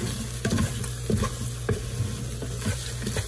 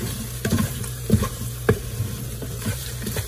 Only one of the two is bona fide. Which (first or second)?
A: first